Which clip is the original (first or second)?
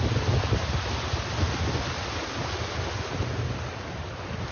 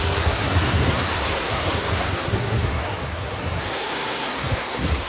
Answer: first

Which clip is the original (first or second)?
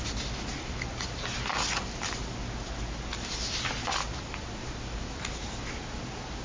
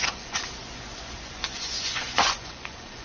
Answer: first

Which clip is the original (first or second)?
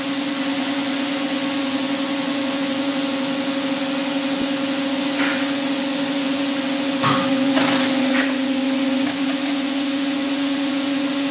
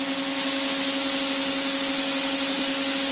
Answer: second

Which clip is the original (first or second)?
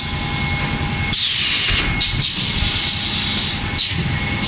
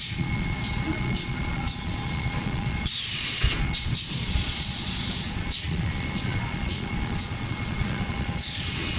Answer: first